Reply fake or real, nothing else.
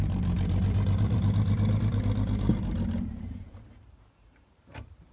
fake